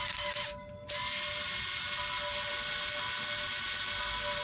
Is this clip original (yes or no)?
yes